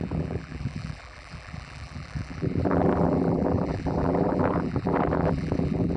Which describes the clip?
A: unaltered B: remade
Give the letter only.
B